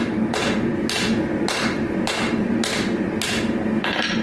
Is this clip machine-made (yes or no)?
no